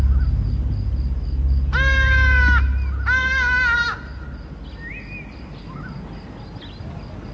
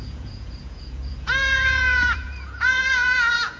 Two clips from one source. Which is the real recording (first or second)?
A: first